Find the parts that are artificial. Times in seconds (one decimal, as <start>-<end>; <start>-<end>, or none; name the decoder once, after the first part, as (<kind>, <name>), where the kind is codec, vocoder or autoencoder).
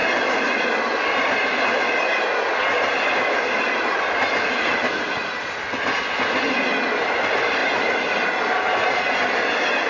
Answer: none